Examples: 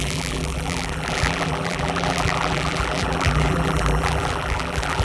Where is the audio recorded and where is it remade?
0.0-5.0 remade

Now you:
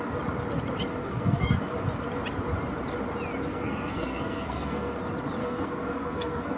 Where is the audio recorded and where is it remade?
0.0-1.0 recorded; 1.0-1.6 remade; 1.6-3.5 recorded; 3.5-5.0 remade; 5.0-5.4 recorded; 5.4-6.6 remade

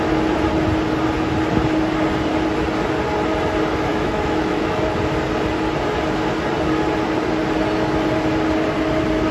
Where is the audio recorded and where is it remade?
0.0-3.9 recorded; 3.9-4.8 remade; 4.8-9.3 recorded